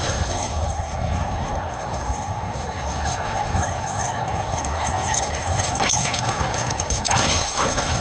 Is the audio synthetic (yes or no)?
yes